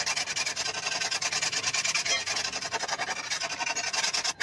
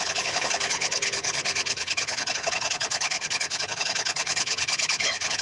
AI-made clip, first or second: second